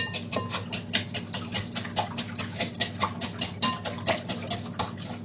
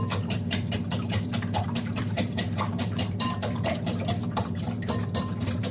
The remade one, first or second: second